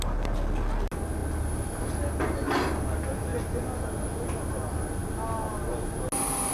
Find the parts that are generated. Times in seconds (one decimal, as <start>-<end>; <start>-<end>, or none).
none